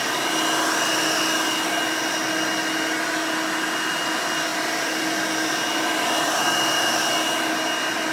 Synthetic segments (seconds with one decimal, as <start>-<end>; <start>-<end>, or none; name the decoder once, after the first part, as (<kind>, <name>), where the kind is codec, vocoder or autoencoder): none